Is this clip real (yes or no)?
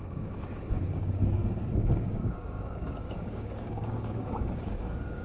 no